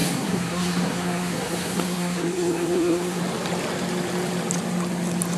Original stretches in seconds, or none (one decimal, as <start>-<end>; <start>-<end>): 3.2-5.4